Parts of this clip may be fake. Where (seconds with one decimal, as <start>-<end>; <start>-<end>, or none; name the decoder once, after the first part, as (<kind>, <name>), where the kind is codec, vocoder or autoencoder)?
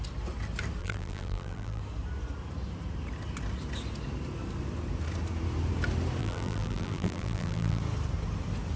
0.8-1.8 (vocoder, BigVGAN v2); 6.2-7.8